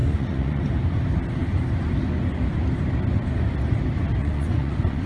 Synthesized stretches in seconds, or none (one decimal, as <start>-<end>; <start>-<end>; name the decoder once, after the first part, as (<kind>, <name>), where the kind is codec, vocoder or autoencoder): 0.0-0.6 (vocoder, Vocos); 4.2-5.1